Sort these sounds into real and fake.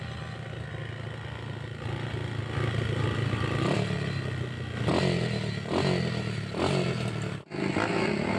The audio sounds real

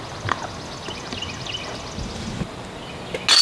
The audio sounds real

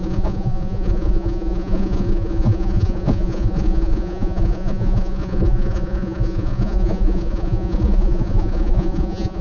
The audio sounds fake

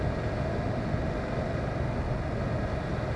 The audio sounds real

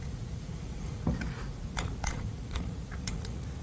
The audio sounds fake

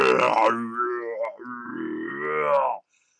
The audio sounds real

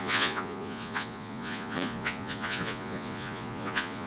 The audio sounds fake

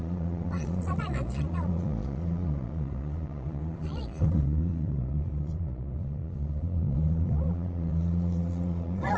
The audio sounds fake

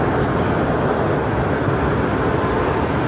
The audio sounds real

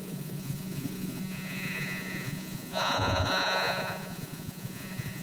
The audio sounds fake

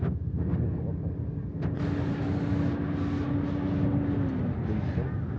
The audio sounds real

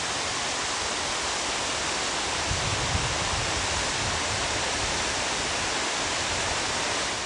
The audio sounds real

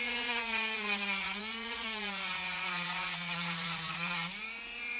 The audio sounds fake